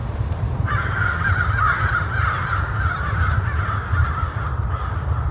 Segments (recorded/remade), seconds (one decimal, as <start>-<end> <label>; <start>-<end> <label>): 0.0-5.3 recorded